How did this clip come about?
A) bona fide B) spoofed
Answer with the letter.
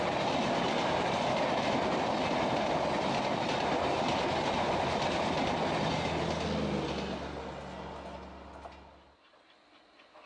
A